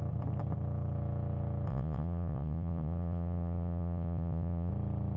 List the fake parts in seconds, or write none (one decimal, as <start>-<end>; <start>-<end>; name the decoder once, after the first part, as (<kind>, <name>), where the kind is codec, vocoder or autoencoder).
1.7-4.7 (vocoder, Vocos)